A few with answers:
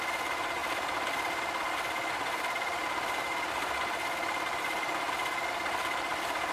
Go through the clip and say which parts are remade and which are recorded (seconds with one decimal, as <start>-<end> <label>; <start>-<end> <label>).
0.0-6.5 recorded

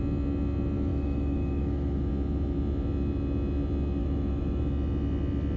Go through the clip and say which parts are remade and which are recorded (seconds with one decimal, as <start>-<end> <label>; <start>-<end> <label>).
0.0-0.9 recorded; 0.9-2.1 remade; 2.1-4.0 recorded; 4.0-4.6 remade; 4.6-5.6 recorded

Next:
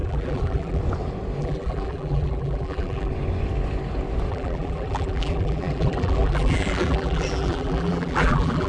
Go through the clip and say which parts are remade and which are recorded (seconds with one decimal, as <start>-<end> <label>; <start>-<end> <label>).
0.0-0.8 remade; 0.8-1.4 recorded; 1.4-3.1 remade; 3.1-4.3 recorded; 4.3-8.7 remade